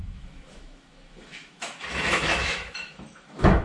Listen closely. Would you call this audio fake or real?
fake